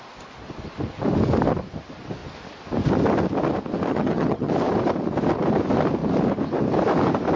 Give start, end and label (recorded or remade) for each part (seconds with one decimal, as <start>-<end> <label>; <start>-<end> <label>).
0.0-3.9 recorded; 3.9-4.5 remade; 4.5-7.4 recorded